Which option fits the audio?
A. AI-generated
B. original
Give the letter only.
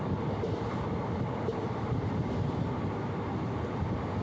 B